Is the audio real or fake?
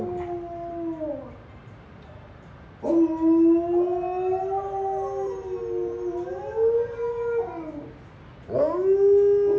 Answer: real